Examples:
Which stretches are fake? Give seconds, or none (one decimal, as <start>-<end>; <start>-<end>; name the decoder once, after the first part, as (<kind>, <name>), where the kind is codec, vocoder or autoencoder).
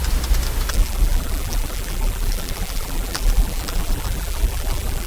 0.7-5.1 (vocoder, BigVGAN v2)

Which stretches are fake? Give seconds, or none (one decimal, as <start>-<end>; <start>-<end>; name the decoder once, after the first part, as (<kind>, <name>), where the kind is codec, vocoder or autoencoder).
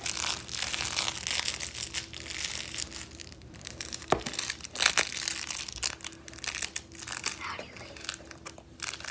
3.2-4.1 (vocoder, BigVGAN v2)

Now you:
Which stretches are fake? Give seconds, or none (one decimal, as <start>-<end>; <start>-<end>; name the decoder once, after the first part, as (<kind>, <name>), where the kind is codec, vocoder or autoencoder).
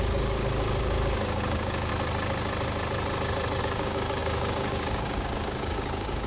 0.0-1.9 (codec, DAC); 3.6-6.3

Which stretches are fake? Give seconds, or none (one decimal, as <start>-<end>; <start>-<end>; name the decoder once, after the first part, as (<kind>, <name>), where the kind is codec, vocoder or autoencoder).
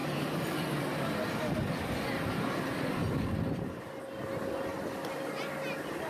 0.0-2.9 (vocoder, BigVGAN v2)